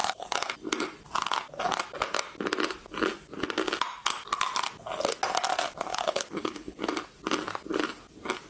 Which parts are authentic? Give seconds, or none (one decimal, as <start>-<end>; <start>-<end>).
0.5-5.9; 6.8-8.5